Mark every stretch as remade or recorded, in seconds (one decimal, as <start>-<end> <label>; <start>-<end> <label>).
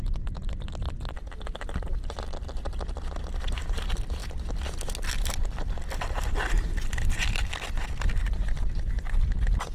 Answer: 0.0-9.7 recorded